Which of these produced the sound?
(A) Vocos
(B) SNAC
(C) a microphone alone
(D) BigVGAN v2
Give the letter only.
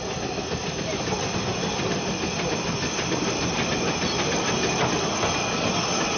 C